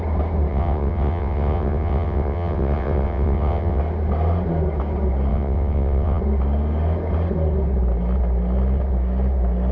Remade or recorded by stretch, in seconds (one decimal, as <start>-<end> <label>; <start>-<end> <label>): 0.0-0.5 recorded; 0.5-3.8 remade; 3.8-5.3 recorded; 5.3-6.2 remade; 6.2-9.7 recorded